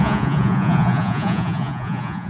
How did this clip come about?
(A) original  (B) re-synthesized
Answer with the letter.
B